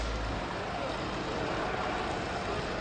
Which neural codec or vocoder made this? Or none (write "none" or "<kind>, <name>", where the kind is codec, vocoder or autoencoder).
none